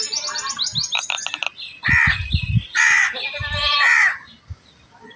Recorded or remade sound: recorded